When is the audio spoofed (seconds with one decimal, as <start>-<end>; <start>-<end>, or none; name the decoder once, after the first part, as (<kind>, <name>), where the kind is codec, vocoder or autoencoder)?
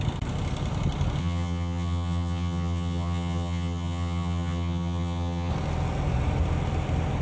1.2-5.5 (vocoder, HiFi-GAN)